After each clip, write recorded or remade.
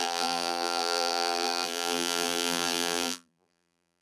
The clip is remade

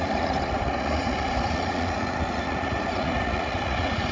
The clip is remade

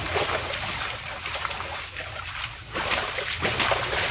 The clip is recorded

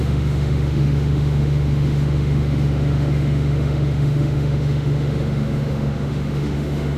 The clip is remade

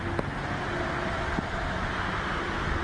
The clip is recorded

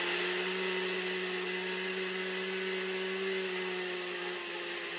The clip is recorded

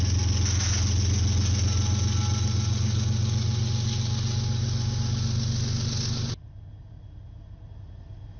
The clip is recorded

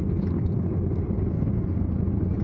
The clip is recorded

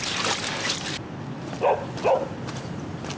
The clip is recorded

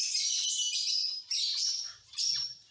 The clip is remade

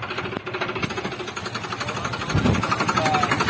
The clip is recorded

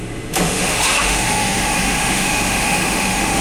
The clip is remade